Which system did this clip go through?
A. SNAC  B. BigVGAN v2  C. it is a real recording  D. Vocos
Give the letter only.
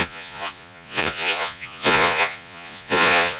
D